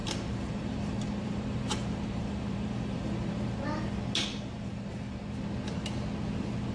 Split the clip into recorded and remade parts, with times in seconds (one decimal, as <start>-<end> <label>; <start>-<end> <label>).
0.0-3.6 remade; 3.6-4.3 recorded; 4.3-5.2 remade; 5.2-6.7 recorded